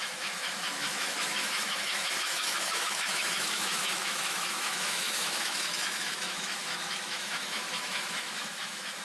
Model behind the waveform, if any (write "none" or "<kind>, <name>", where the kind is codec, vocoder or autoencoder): autoencoder, DAC-VAE